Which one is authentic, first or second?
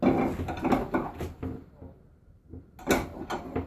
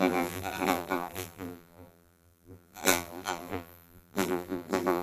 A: first